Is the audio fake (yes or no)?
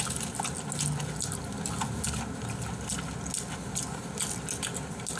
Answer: no